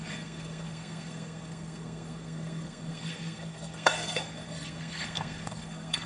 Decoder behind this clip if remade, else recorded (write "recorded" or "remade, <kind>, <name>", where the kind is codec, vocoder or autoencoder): remade, codec, SNAC